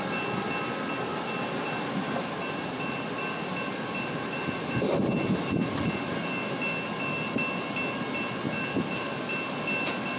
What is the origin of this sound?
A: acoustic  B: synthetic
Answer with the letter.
A